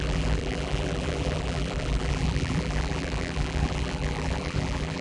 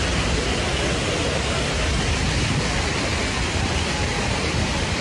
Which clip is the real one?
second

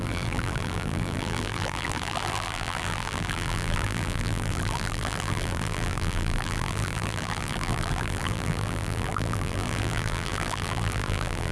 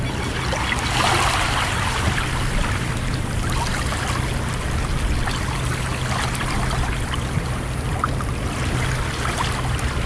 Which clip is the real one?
second